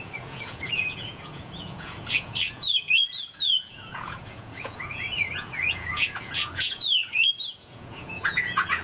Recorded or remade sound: remade